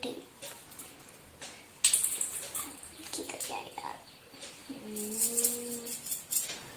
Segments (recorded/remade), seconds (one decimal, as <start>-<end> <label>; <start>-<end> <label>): 0.0-3.0 recorded; 3.0-3.5 remade; 3.5-6.8 recorded